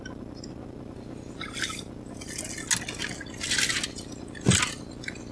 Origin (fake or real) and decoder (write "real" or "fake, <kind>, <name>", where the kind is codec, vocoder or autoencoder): real